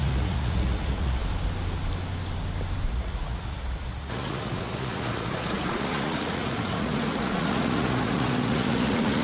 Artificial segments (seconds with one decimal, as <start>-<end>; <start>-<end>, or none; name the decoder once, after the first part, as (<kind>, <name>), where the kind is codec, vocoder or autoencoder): 0.0-1.2 (vocoder, Vocos); 2.9-9.2